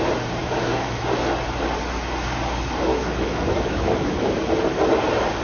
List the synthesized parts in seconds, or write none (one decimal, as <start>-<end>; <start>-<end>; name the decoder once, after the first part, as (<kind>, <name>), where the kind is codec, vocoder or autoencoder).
0.4-1.0 (autoencoder, DAC-VAE); 2.9-4.3